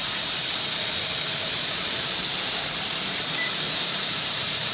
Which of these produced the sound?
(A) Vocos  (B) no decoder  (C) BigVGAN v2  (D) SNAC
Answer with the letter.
C